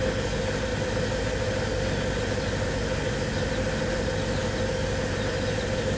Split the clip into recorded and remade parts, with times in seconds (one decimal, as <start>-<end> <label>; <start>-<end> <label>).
0.0-6.0 recorded